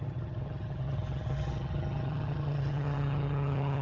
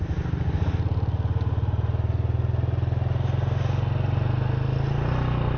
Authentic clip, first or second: second